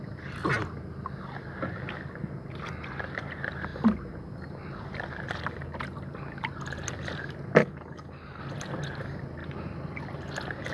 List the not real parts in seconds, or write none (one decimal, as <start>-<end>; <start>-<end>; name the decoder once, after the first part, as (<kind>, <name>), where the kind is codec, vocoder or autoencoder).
7.6-8.4 (codec, DAC)